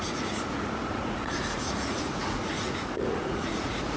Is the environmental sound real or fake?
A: fake